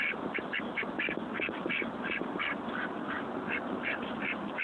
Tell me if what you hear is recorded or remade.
recorded